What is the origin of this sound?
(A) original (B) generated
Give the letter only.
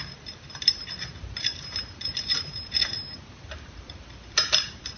B